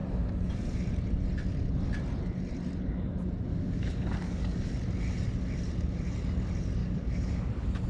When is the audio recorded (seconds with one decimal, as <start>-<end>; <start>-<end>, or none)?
0.0-3.5; 4.7-6.8; 7.5-7.9